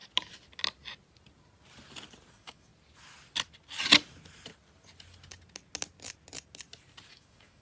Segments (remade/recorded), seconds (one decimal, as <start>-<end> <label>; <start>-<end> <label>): 0.0-2.3 recorded; 2.3-2.7 remade; 2.7-7.1 recorded; 7.1-7.6 remade